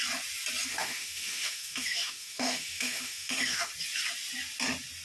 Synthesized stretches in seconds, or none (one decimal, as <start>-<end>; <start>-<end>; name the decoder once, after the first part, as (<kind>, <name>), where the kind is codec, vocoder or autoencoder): 0.7-3.7 (autoencoder, DAC-VAE)